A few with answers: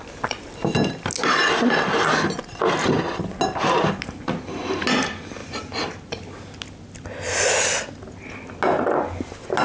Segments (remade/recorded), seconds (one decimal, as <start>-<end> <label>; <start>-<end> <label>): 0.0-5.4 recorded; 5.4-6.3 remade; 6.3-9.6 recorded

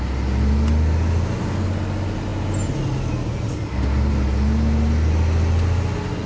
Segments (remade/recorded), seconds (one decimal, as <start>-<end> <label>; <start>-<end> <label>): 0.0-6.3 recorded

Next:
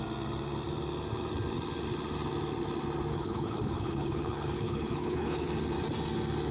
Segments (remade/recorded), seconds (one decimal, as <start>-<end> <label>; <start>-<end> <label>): 0.0-3.1 recorded; 3.1-5.5 remade; 5.5-6.5 recorded

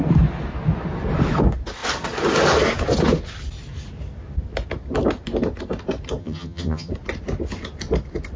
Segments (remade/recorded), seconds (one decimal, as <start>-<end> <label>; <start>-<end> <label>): 0.0-6.2 recorded; 6.2-6.9 remade; 6.9-8.4 recorded

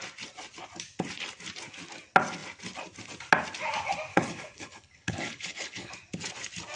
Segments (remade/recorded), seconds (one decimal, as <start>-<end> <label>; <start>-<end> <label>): 0.0-4.1 recorded; 4.1-5.9 remade; 5.9-6.8 recorded